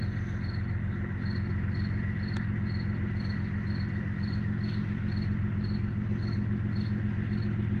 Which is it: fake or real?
real